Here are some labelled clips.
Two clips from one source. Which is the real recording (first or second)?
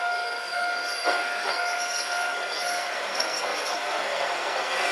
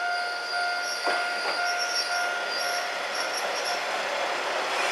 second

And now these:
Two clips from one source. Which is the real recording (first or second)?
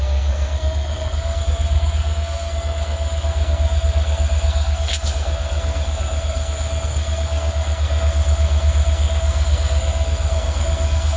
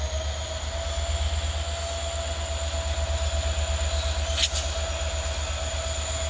second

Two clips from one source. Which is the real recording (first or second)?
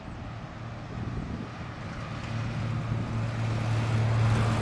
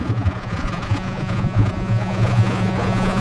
first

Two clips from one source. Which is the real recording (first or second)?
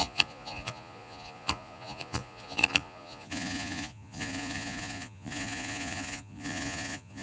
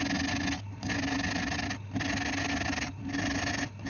second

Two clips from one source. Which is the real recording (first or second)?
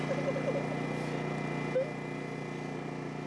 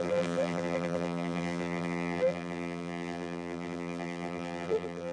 first